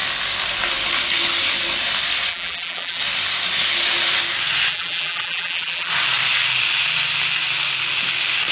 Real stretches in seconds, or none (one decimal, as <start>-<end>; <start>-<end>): 0.0-2.3; 3.0-4.7; 5.9-8.5